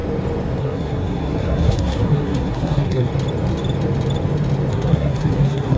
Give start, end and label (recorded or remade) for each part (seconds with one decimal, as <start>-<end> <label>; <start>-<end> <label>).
0.0-0.6 recorded; 0.6-3.1 remade; 3.1-4.7 recorded; 4.7-5.8 remade